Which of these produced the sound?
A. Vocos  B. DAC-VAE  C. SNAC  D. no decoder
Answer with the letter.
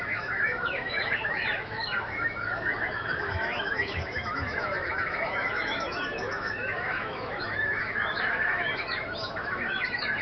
B